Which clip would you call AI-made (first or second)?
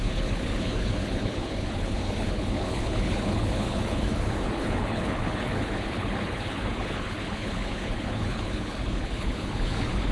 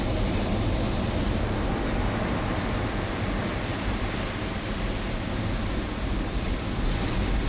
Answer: first